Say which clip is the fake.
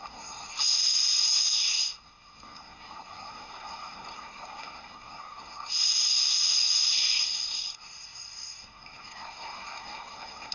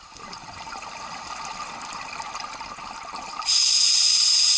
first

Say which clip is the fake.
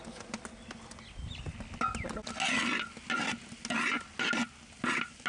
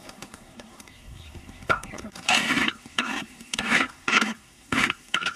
second